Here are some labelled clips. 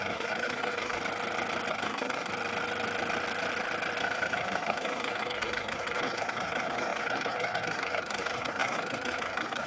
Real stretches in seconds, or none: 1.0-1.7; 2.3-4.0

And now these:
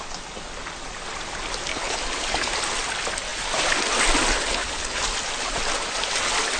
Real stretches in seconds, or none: 0.0-1.7; 2.5-4.4; 5.0-6.6